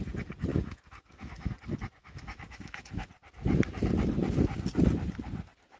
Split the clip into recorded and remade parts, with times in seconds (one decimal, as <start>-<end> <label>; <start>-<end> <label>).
0.0-0.5 recorded; 0.5-1.5 remade; 1.5-2.0 recorded; 2.0-3.1 remade; 3.1-5.8 recorded